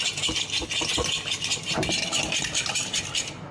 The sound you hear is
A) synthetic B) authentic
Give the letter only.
B